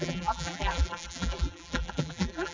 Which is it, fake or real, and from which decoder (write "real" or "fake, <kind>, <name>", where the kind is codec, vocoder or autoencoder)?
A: fake, vocoder, BigVGAN v2